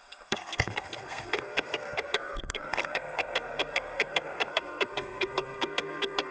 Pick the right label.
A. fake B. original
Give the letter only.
A